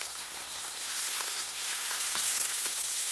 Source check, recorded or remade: remade